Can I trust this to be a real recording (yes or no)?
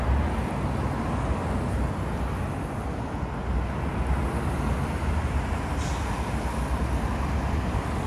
yes